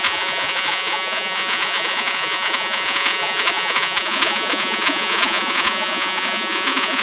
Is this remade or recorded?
remade